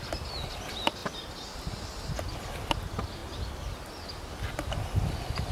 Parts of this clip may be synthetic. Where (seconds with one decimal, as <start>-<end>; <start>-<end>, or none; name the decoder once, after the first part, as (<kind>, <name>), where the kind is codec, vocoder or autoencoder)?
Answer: none